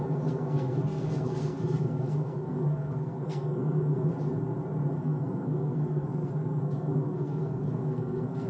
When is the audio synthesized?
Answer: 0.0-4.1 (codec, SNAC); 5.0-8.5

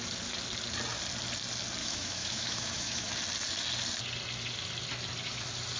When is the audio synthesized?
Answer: 1.8-3.1 (autoencoder, DAC-VAE)

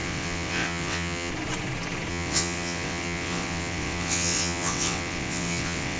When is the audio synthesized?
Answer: 0.0-1.3 (vocoder, WaveNeXt); 2.1-6.0

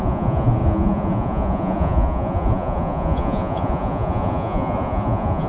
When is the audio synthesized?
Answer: 0.0-5.5 (vocoder, Vocos)

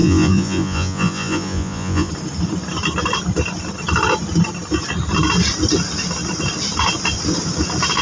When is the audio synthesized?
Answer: 0.0-2.1 (vocoder, Vocos)